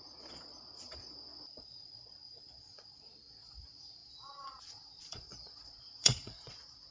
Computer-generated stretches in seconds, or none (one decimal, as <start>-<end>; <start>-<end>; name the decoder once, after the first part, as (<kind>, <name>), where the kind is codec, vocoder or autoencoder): 0.0-6.9 (vocoder, Vocos)

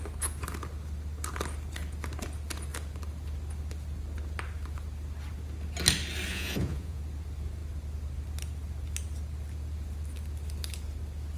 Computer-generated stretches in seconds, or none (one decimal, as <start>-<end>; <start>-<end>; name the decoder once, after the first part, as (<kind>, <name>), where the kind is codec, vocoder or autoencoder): 6.3-7.0 (vocoder, Vocos)

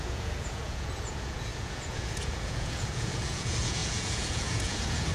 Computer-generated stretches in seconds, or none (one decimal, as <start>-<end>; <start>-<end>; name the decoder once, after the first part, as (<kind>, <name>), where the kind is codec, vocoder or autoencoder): 0.0-5.1 (vocoder, Vocos)

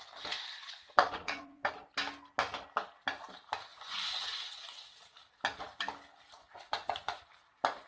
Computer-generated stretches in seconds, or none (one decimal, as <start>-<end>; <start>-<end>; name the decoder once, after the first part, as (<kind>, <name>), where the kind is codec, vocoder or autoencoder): 0.6-1.7 (vocoder, Vocos); 3.7-4.9; 6.4-7.2

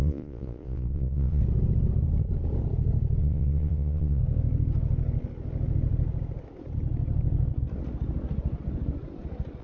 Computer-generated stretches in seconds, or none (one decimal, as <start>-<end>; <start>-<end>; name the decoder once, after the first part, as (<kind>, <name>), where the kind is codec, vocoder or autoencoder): 0.0-1.4 (vocoder, Vocos); 3.2-4.2

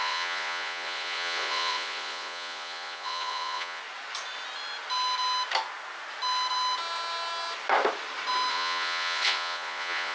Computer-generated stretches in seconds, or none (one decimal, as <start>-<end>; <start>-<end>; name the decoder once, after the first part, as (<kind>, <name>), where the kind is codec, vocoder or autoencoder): 0.0-3.8 (vocoder, Vocos); 8.5-10.1